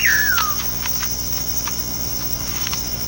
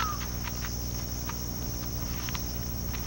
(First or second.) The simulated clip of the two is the first